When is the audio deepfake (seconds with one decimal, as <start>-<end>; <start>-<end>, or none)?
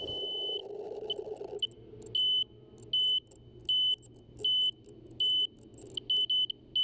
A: none